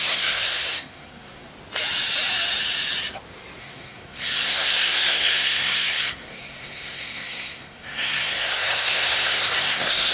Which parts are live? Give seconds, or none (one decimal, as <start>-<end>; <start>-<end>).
1.5-3.6